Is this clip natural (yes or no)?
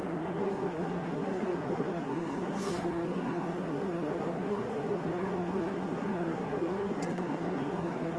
no